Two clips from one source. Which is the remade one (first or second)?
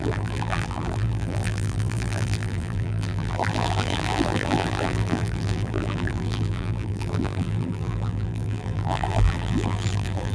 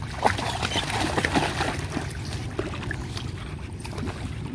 first